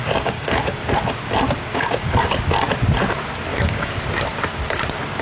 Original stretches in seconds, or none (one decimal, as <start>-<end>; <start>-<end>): 0.6-1.7; 2.4-3.5; 4.0-5.2